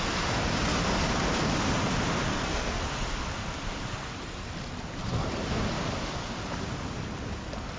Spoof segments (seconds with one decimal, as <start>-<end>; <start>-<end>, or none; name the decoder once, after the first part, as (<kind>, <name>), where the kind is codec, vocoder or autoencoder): 2.3-2.8 (codec, SNAC)